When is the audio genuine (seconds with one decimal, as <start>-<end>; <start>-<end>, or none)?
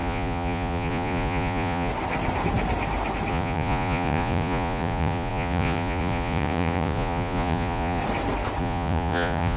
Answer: 1.9-3.3; 8.0-8.6